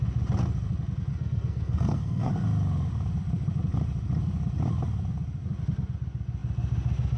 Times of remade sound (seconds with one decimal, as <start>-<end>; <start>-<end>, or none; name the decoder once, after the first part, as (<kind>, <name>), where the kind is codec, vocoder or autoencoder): 1.1-2.3 (codec, SNAC)